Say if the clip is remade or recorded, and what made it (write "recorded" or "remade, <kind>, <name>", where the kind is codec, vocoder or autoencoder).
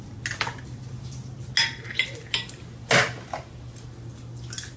recorded